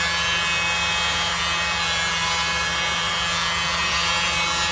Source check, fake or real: real